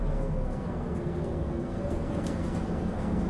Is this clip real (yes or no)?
no